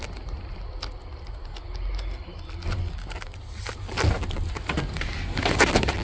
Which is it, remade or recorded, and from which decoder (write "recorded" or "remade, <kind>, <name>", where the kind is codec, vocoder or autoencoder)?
recorded